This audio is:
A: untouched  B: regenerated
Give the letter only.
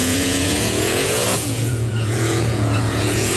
B